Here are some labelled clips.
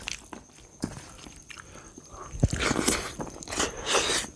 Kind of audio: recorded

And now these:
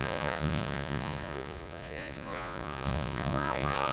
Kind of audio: remade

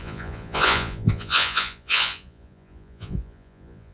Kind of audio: remade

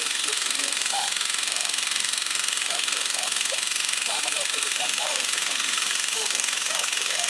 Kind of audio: remade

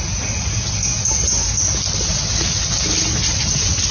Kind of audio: recorded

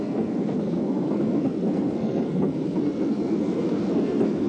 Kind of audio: remade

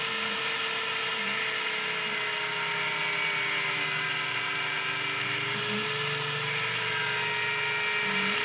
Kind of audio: recorded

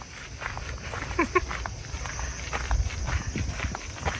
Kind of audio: recorded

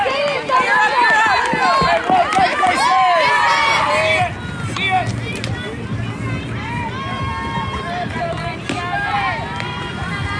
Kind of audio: recorded